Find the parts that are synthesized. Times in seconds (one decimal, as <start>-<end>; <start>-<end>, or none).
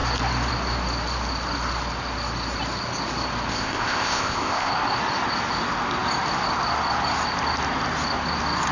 3.5-4.7